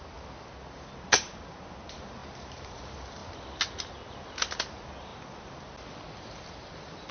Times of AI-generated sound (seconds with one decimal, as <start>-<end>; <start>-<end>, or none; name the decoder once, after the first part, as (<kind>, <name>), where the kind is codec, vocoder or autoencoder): 2.2-2.8 (vocoder, BigVGAN v2)